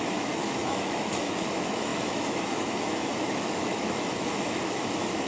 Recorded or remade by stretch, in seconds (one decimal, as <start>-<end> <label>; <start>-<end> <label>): 0.0-5.3 remade